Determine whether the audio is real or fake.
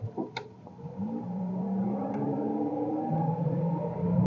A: fake